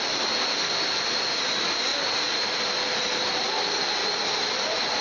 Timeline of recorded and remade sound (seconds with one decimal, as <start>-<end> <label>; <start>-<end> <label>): 0.0-5.0 recorded